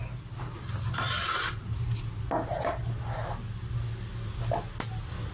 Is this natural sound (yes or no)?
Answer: yes